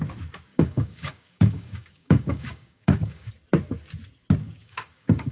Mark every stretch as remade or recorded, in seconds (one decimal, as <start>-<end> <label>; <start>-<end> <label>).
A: 0.0-0.5 recorded; 0.5-3.3 remade; 3.3-4.6 recorded; 4.6-5.3 remade